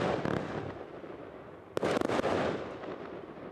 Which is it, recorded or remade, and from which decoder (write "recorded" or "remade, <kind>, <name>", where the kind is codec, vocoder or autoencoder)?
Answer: recorded